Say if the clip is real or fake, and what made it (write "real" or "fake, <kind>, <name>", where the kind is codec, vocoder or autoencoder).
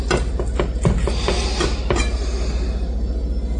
real